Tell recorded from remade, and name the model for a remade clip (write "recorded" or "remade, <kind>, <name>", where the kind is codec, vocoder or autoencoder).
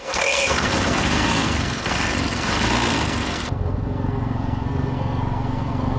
remade, codec, SNAC